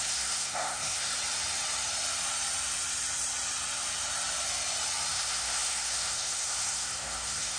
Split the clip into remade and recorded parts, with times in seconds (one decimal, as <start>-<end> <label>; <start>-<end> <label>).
0.0-1.1 remade; 1.1-5.1 recorded; 5.1-7.6 remade